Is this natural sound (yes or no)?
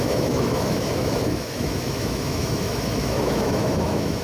no